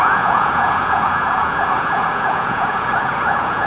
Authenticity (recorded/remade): remade